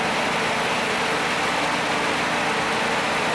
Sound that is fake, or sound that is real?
real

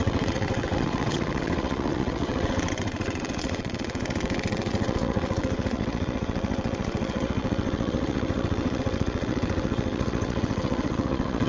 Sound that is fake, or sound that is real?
fake